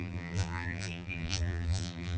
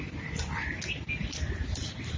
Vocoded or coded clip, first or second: first